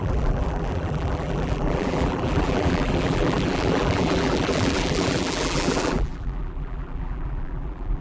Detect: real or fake fake